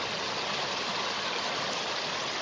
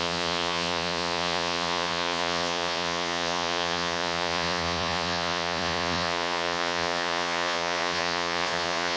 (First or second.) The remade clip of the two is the second